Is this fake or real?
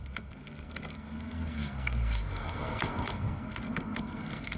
fake